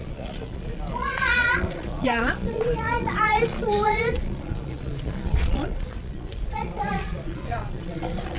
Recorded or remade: remade